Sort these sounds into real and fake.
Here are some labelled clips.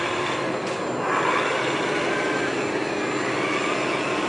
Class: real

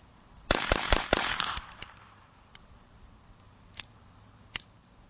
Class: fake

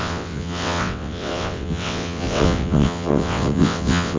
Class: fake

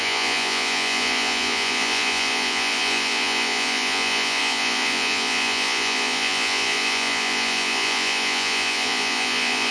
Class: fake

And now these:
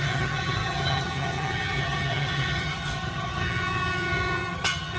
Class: fake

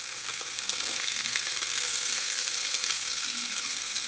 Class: fake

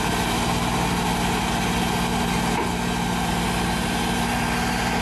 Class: real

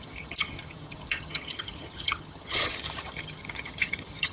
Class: fake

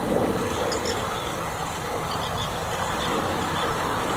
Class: real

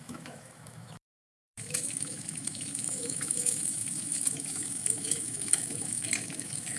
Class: fake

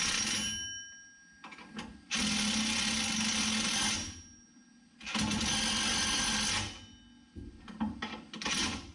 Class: real